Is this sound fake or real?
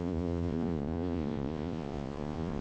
fake